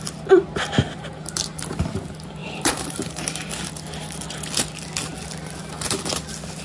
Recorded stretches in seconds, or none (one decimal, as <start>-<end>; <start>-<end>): 0.0-2.4; 3.5-6.6